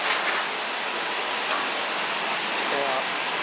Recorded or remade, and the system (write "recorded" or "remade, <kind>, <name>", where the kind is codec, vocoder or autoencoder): recorded